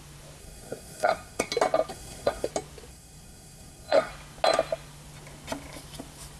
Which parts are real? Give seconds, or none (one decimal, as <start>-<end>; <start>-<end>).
0.0-0.4; 1.5-1.9; 2.5-2.9; 4.1-6.4